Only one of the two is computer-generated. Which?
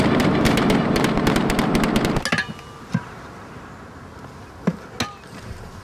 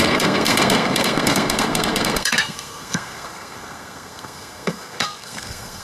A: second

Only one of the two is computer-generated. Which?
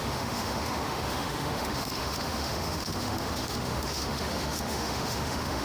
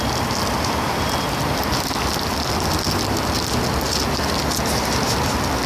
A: first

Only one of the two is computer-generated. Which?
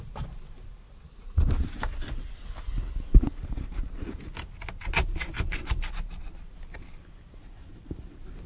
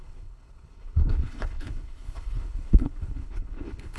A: second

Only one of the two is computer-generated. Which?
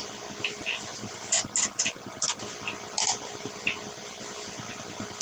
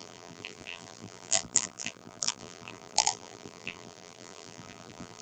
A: second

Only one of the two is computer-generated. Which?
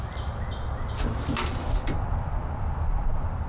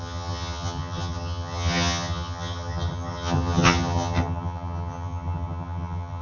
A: second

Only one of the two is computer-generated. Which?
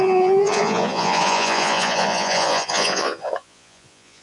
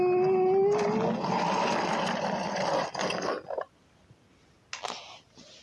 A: first